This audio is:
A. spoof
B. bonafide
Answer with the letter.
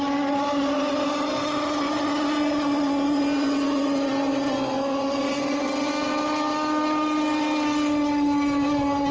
B